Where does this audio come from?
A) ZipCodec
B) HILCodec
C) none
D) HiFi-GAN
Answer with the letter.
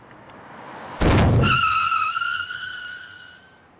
C